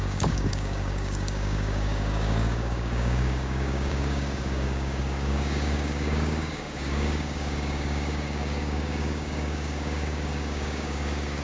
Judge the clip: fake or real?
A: fake